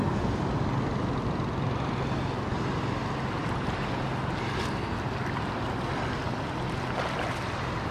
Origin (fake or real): real